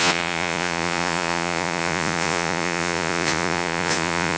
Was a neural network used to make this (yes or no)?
yes